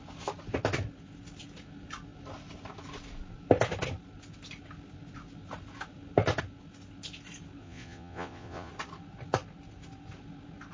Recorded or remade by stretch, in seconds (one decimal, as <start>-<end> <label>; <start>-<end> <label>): 0.0-7.6 recorded; 7.6-8.7 remade; 8.7-10.7 recorded